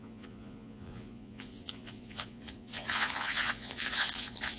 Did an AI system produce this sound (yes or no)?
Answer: yes